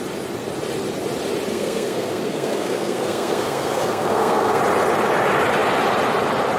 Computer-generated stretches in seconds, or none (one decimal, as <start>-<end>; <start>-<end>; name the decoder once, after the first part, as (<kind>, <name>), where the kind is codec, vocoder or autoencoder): 1.5-4.6 (codec, SNAC)